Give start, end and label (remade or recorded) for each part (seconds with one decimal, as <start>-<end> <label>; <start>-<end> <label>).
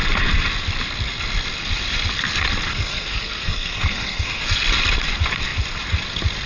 0.0-2.7 recorded; 2.7-4.4 remade; 4.4-6.5 recorded